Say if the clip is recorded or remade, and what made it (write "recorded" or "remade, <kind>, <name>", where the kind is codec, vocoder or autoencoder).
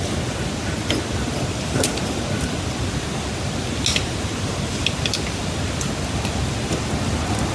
recorded